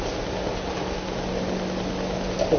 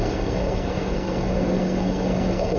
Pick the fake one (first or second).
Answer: second